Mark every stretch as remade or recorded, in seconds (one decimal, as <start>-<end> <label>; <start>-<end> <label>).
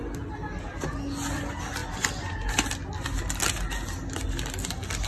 0.0-5.1 recorded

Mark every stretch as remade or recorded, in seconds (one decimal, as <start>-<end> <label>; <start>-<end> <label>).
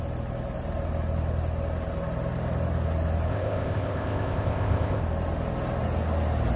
0.0-3.3 recorded; 3.3-5.0 remade; 5.0-6.6 recorded